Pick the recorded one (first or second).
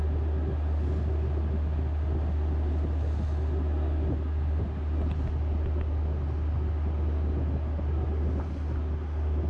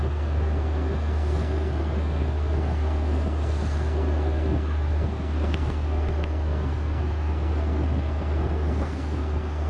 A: first